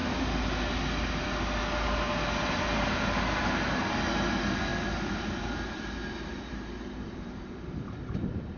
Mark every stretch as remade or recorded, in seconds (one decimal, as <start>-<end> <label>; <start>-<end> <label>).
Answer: 0.0-4.7 recorded; 4.7-8.0 remade; 8.0-8.6 recorded